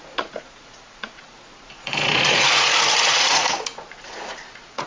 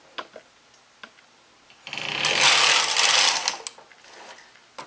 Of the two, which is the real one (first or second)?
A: second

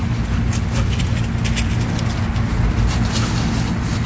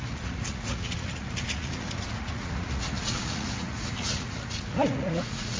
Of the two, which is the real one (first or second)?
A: first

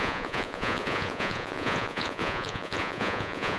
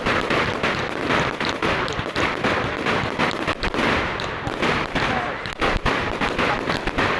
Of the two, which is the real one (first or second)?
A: second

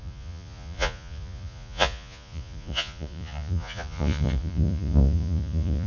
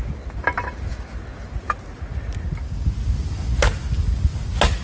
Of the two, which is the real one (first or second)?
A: second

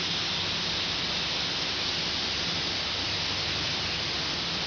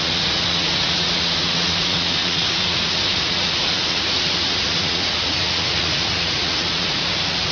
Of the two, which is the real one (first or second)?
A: first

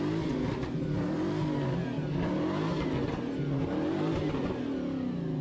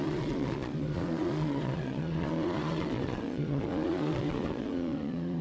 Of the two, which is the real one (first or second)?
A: first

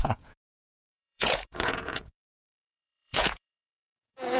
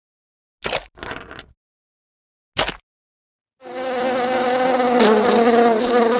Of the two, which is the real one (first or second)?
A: second